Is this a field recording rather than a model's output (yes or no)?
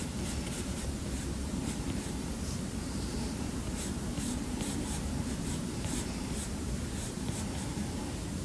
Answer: no